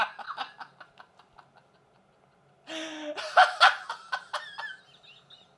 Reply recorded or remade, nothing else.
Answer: recorded